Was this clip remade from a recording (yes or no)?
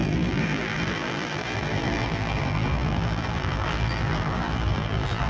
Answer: yes